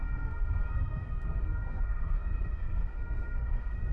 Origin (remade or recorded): remade